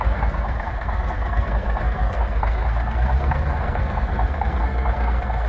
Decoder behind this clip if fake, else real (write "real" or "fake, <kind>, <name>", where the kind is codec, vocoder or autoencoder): fake, codec, SNAC